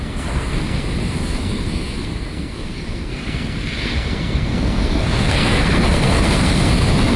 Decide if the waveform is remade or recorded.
remade